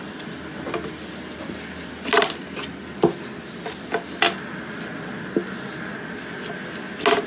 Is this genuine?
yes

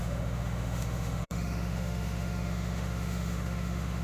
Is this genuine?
no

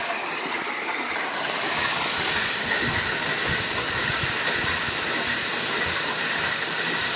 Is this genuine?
yes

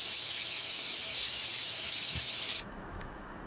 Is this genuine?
no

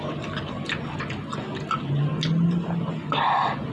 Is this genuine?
yes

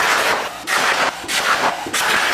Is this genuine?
yes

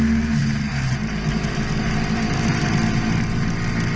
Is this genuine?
yes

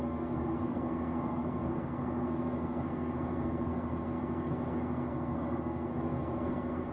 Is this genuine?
no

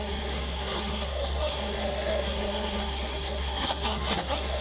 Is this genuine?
no